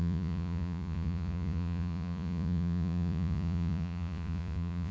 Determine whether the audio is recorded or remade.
remade